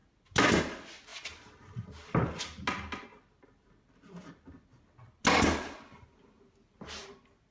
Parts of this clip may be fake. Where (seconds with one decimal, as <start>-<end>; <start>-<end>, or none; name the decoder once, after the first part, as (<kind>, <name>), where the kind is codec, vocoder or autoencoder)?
none